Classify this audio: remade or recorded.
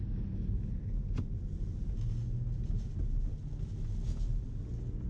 recorded